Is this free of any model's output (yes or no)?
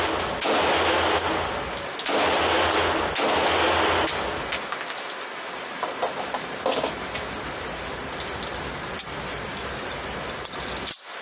yes